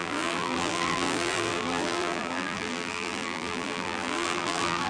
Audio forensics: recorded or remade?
remade